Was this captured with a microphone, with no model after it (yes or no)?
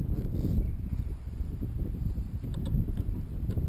yes